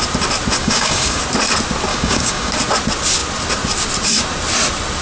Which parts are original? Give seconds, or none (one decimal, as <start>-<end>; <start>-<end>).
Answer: 0.0-0.6; 1.2-1.9; 2.5-5.0